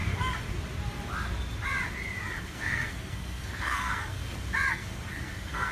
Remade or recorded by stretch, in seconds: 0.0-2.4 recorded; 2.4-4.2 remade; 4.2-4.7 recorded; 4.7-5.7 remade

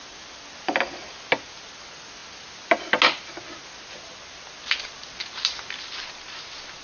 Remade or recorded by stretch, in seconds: 0.0-6.8 recorded

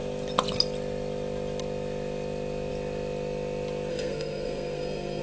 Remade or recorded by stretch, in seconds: 0.0-3.9 recorded; 3.9-5.2 remade